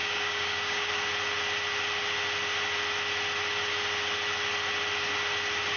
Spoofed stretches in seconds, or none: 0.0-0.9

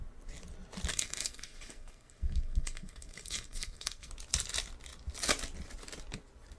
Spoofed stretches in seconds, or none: 0.9-4.1

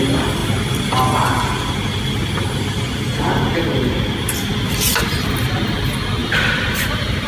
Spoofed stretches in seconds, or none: 6.2-7.3